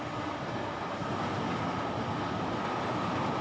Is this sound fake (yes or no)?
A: no